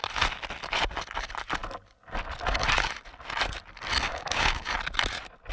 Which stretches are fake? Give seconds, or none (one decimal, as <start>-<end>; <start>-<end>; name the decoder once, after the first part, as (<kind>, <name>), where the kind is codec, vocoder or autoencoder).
4.1-4.7 (codec, DAC)